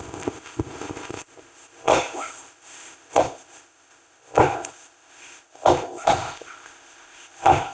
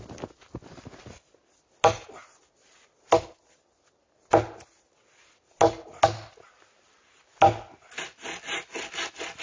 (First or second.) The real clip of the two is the second